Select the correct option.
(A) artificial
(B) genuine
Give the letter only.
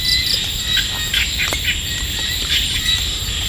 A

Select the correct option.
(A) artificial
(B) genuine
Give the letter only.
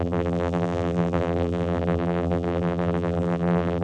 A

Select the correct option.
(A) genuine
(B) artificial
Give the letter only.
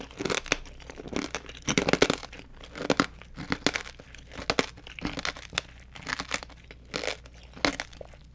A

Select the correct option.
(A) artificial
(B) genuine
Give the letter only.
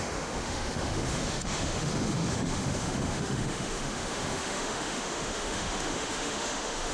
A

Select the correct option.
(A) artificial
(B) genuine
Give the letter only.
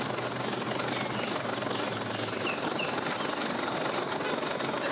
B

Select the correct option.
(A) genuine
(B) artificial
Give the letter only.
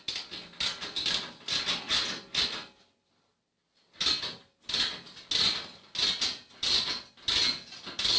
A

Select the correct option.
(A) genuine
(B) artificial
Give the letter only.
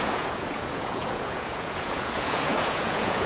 B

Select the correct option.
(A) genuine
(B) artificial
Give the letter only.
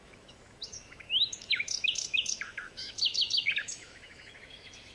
B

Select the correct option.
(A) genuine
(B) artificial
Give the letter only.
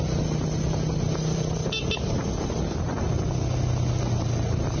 A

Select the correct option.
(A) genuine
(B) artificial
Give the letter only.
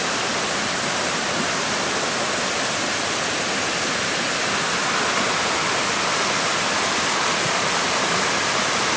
A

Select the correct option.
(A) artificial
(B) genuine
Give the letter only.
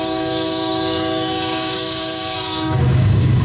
A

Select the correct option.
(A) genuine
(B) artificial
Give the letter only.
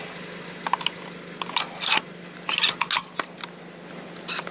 A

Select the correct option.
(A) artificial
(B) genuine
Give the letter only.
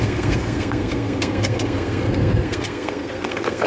A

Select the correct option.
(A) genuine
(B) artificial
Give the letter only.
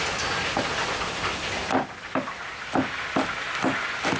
A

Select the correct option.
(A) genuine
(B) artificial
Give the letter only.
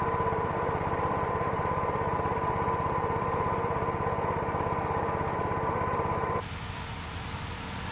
B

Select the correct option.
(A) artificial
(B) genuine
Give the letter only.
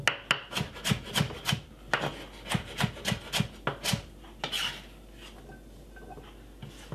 B